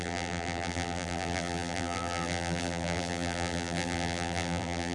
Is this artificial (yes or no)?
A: yes